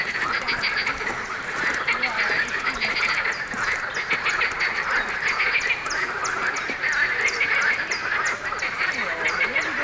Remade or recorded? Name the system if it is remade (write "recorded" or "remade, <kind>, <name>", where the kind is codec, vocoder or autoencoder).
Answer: recorded